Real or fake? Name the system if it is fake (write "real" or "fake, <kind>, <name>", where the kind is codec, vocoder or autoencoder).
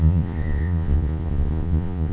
fake, vocoder, Vocos